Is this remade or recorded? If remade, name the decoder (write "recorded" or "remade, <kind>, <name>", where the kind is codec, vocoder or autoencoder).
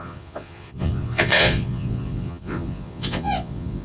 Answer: remade, vocoder, Vocos